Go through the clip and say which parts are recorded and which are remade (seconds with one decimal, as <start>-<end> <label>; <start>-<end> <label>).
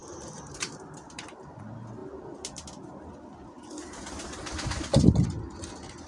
0.0-1.6 remade; 1.6-6.1 recorded